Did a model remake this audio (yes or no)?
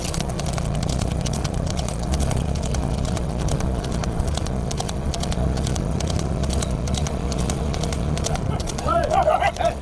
yes